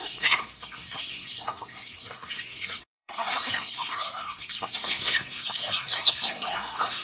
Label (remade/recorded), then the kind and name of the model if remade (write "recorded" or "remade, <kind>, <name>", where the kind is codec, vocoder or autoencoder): remade, codec, SNAC